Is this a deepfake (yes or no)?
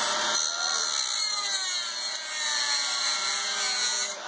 no